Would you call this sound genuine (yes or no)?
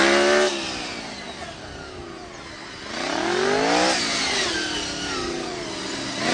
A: yes